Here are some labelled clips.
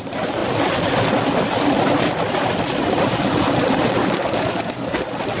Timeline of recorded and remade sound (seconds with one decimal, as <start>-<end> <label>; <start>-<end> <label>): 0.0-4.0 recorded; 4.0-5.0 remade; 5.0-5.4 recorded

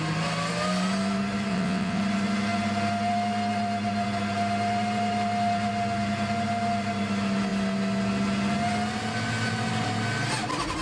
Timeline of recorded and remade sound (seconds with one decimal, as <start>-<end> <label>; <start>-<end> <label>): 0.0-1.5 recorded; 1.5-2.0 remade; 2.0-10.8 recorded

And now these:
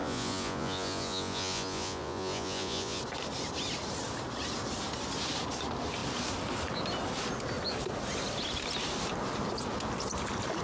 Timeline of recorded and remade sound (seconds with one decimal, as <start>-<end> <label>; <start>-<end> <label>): 0.0-3.0 remade; 3.0-10.6 recorded

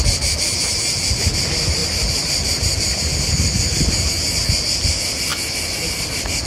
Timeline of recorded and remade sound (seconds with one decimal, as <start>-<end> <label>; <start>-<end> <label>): 0.0-6.5 recorded

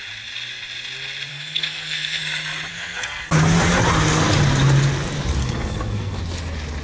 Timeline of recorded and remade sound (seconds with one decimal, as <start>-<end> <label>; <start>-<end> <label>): 0.0-1.3 recorded; 1.3-2.2 remade; 2.2-2.7 recorded; 2.7-3.3 remade; 3.3-5.4 recorded; 5.4-6.2 remade; 6.2-6.8 recorded